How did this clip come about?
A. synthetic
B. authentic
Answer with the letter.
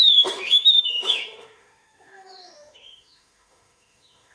A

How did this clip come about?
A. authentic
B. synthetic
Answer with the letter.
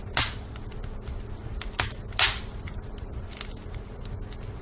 A